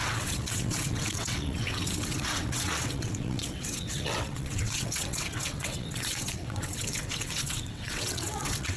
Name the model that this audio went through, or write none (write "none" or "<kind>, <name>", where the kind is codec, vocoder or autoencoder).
vocoder, WaveNeXt